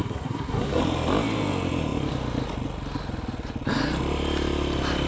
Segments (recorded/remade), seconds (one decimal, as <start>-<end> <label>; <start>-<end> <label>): 0.0-0.8 remade; 0.8-5.1 recorded